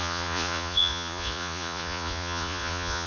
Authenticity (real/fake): fake